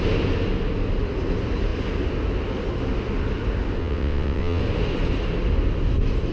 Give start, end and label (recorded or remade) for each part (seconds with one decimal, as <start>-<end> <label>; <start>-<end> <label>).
0.0-3.8 recorded; 3.8-4.6 remade; 4.6-6.3 recorded